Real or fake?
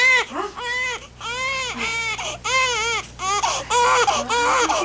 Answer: real